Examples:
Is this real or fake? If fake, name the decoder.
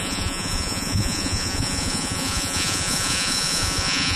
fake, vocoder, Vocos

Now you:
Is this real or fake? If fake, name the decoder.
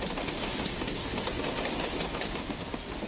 real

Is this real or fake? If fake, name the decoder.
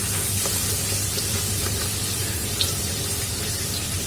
real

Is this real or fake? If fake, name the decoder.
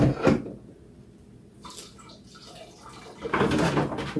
real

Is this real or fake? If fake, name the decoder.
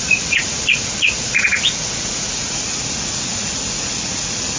fake, vocoder, Vocos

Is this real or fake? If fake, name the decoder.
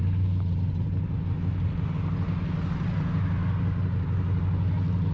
real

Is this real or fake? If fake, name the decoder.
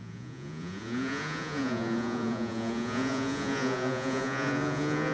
fake, vocoder, Vocos